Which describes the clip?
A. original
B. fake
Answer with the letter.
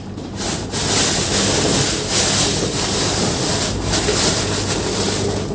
A